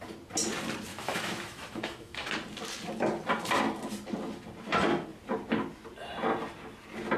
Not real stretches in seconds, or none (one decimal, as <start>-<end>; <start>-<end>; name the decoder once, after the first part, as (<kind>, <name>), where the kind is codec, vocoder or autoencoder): 0.9-2.3 (autoencoder, DAC-VAE)